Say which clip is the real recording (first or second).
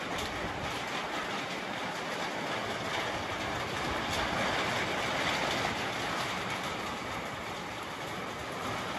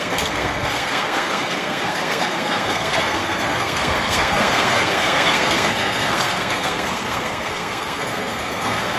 first